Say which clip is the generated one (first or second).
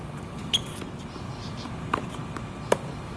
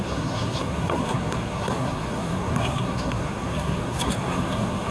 second